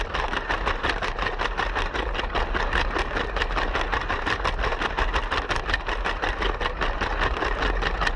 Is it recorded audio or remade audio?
recorded